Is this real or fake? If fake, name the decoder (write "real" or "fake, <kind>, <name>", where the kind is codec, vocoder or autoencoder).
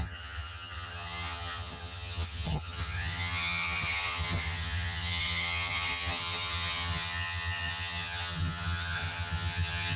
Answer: fake, vocoder, HiFi-GAN